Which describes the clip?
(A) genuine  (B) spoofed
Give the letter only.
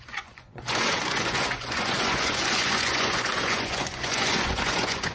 B